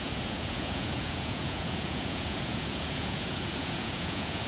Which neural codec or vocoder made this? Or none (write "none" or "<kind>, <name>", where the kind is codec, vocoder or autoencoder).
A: vocoder, Vocos